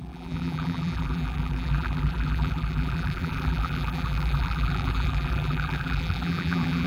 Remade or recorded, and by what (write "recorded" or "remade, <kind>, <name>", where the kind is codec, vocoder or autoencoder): remade, vocoder, BigVGAN v2